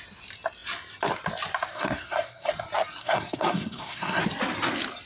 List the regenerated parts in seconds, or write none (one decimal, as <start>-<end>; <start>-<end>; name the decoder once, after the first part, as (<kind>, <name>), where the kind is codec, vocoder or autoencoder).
1.7-2.5 (codec, SNAC); 3.0-4.2